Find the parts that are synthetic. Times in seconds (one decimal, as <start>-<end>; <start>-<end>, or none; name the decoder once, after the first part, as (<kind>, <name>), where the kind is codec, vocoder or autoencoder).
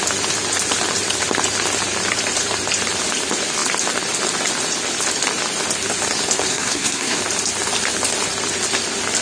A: 6.5-7.2 (codec, SNAC)